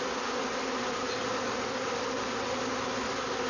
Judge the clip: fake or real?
real